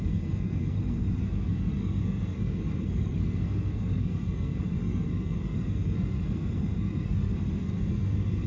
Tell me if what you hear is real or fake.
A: fake